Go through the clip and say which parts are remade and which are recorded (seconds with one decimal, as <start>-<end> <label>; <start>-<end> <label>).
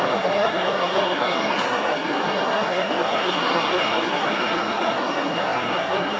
0.0-6.2 remade